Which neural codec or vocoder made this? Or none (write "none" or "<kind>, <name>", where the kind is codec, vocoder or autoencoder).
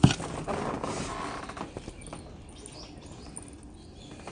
none